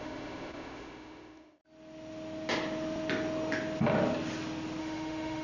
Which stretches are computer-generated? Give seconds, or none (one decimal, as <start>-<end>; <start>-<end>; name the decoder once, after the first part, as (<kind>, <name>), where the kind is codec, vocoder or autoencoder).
0.0-1.6 (autoencoder, DAC-VAE); 4.8-5.4